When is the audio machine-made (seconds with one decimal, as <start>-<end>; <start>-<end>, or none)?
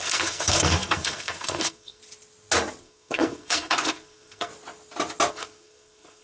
0.0-2.0; 2.8-4.5; 5.3-6.2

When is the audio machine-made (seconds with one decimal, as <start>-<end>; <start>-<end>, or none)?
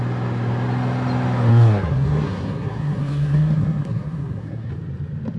1.5-4.7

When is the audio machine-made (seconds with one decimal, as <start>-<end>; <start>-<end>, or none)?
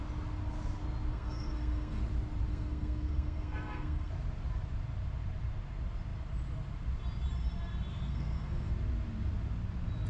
1.1-2.0; 2.5-4.1; 7.9-8.7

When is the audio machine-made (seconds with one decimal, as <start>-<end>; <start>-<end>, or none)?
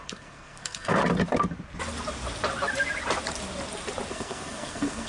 0.0-1.0; 4.1-5.1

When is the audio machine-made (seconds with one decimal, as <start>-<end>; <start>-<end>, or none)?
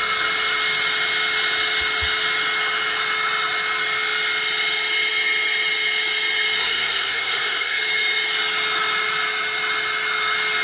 6.6-7.8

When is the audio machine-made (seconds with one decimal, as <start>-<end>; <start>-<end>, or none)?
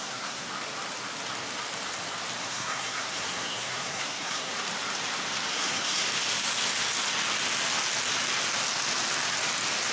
0.0-0.5; 2.4-4.5; 5.5-6.1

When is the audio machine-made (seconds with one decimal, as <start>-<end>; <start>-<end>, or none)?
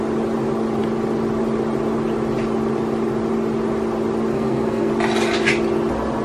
4.3-4.9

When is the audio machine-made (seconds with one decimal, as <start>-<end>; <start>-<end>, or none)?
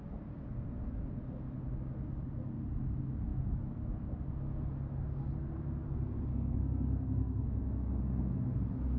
6.3-8.4